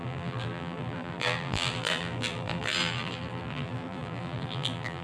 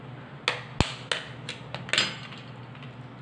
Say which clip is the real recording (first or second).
second